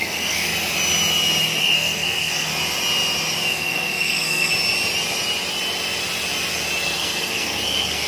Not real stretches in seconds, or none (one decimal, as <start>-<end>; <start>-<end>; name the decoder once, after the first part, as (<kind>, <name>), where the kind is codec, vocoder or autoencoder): 0.0-0.5 (codec, SNAC); 1.6-2.5; 3.5-4.5; 6.8-8.1